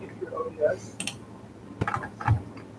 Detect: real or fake real